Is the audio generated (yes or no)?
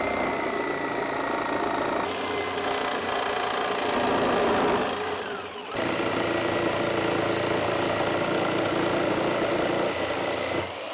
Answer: no